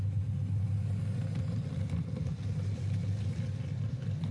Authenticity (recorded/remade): recorded